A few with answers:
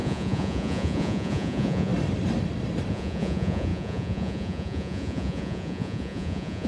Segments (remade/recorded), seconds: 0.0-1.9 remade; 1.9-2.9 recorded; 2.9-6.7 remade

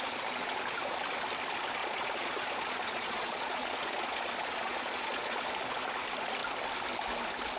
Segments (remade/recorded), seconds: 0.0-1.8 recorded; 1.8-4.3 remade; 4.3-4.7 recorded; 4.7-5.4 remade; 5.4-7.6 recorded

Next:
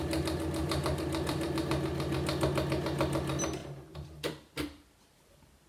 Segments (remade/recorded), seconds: 0.0-0.6 recorded; 0.6-1.6 remade; 1.6-3.6 recorded; 3.6-5.0 remade; 5.0-5.7 recorded

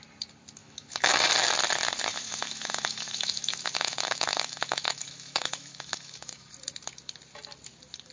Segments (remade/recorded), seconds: 0.0-0.6 recorded; 0.6-1.2 remade; 1.2-2.1 recorded; 2.1-6.5 remade; 6.5-8.1 recorded